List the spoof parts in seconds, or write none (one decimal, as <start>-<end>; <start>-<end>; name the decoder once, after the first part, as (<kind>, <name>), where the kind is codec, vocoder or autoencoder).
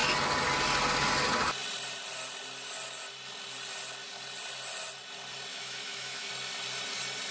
5.5-6.3 (autoencoder, DAC-VAE)